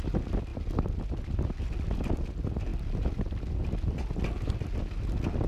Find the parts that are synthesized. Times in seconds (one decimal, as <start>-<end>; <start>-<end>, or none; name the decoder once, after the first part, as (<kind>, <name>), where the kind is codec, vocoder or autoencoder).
none